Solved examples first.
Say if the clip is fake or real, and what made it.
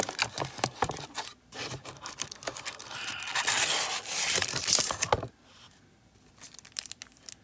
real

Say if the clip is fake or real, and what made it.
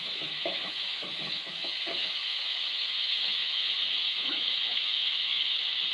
fake, autoencoder, DAC-VAE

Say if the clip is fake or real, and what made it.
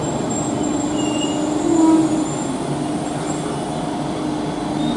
real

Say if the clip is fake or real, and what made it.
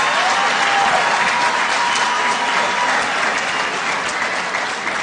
real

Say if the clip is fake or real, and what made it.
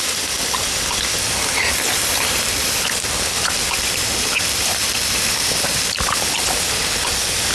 real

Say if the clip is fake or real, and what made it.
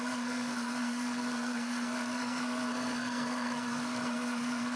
fake, codec, SNAC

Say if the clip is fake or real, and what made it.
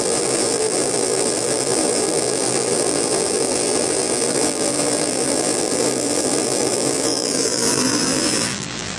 fake, vocoder, BigVGAN v2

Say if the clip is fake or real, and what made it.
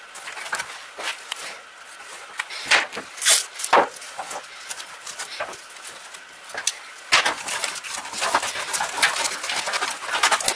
real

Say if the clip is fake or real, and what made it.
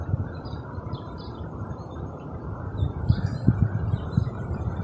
fake, vocoder, BigVGAN v2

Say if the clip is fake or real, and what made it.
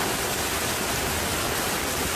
real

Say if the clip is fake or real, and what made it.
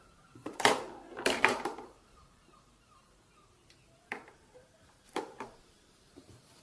fake, vocoder, BigVGAN v2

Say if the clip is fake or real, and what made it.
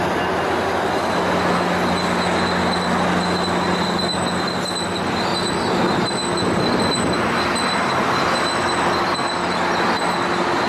real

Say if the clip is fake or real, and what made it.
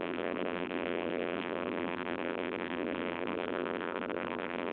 fake, vocoder, BigVGAN v2